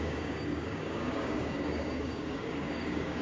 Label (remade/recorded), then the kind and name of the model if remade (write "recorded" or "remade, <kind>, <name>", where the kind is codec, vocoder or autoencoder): remade, codec, DAC